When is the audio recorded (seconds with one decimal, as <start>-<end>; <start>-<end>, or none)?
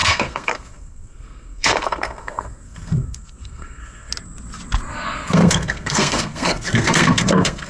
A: 4.1-4.9